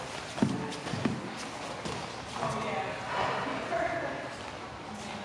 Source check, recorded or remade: recorded